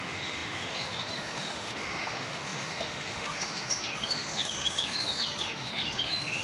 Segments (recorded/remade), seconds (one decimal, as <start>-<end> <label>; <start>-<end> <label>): 0.0-6.4 remade

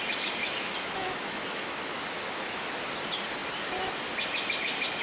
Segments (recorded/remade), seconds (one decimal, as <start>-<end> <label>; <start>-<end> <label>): 0.0-0.4 recorded; 0.4-2.8 remade; 2.8-5.0 recorded

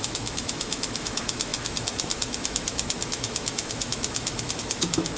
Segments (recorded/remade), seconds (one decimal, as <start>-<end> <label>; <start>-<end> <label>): 0.0-5.2 remade

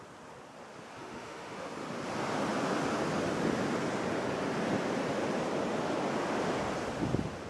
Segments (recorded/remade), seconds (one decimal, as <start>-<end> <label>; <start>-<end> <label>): 0.0-1.0 recorded; 1.0-1.7 remade; 1.7-7.5 recorded